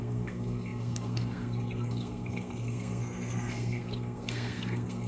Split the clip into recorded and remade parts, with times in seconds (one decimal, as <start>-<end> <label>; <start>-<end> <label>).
0.0-5.1 remade